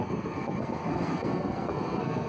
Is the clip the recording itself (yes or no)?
no